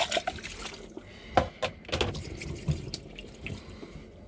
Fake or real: real